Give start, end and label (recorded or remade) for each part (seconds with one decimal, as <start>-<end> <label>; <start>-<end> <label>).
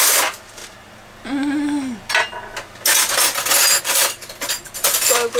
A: 0.0-0.6 remade; 0.6-3.8 recorded; 3.8-5.4 remade